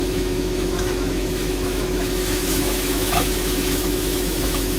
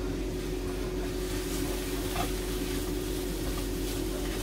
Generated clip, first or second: first